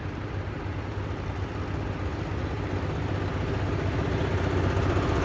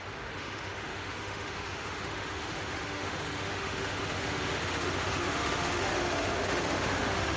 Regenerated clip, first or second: second